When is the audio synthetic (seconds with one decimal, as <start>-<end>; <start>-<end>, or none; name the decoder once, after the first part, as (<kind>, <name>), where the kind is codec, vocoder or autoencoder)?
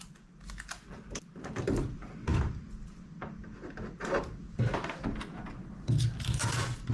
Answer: none